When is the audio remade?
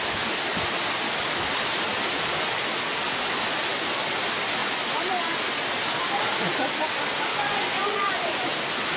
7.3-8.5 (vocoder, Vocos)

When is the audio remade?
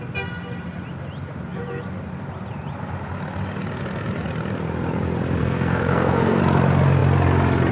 5.4-6.4 (codec, SNAC)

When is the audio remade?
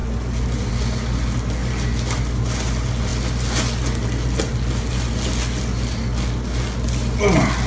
none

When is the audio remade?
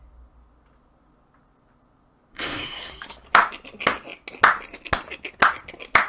2.3-2.9 (codec, SNAC)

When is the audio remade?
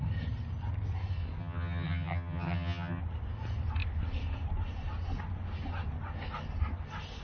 1.4-3.0 (vocoder, HiFi-GAN)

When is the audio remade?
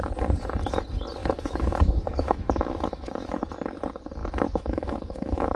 1.2-3.3 (autoencoder, DAC-VAE); 4.2-5.6